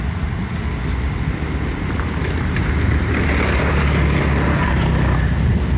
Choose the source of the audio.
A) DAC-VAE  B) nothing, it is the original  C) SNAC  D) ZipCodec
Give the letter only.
B